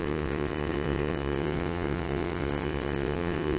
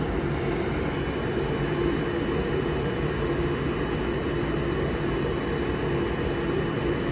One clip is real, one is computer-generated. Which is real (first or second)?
second